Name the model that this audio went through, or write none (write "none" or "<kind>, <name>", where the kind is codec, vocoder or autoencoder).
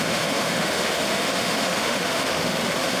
autoencoder, DAC-VAE